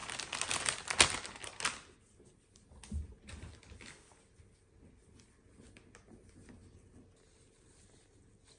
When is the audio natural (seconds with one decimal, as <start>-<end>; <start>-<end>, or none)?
0.0-8.6